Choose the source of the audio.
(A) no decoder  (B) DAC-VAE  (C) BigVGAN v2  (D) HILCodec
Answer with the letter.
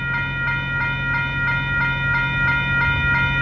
A